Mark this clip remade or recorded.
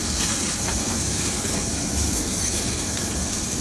remade